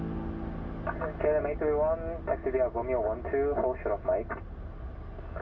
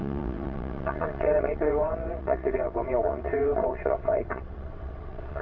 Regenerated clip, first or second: second